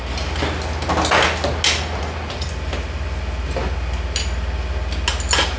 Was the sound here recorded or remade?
recorded